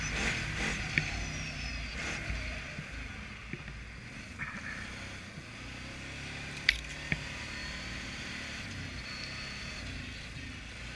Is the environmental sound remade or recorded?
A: recorded